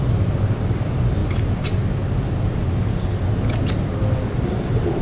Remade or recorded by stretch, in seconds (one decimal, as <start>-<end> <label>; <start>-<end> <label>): 0.0-1.2 remade; 1.2-4.0 recorded; 4.0-5.0 remade